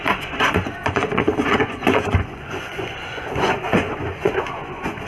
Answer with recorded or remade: remade